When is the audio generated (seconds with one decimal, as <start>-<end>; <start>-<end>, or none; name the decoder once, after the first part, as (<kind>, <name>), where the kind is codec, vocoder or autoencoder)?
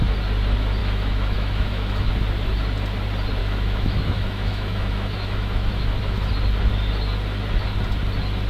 0.8-2.1 (autoencoder, DAC-VAE); 3.4-6.3